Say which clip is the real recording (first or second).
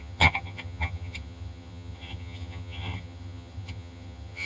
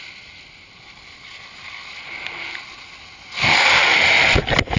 second